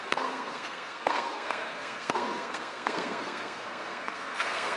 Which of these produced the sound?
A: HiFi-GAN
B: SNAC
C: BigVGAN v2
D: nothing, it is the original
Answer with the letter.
B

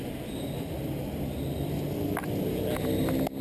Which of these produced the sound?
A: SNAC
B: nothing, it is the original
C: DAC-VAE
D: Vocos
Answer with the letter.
B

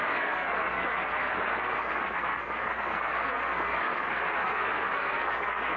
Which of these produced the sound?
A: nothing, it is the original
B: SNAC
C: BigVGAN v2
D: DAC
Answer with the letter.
B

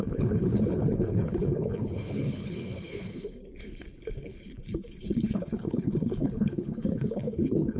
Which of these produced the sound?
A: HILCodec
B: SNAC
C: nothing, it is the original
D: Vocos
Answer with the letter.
A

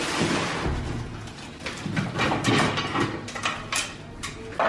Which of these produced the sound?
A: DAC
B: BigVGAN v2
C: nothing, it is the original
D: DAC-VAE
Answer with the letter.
C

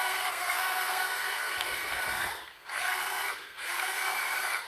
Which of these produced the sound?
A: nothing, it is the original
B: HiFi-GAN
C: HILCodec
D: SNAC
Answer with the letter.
D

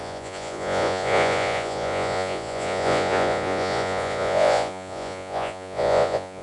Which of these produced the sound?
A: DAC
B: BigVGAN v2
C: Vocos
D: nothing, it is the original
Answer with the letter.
C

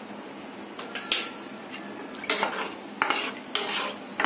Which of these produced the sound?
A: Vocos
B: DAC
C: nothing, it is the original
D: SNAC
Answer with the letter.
C